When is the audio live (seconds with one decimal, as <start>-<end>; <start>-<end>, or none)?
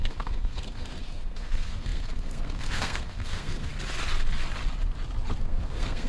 3.7-5.4